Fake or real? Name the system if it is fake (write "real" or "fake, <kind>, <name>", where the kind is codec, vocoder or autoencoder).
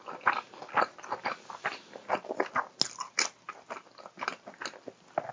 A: real